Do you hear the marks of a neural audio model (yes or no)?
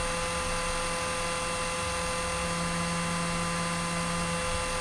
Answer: no